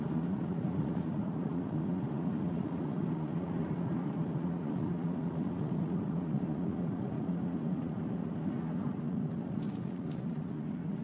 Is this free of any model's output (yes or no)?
no